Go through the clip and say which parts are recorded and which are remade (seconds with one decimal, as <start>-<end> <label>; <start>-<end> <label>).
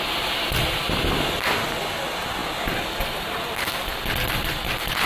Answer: 0.0-5.1 recorded